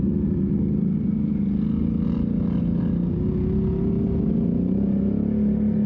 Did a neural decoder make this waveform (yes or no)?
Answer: no